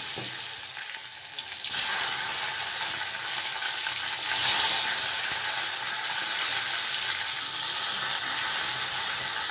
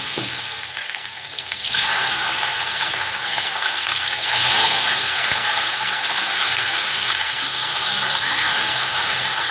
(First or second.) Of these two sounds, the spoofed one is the second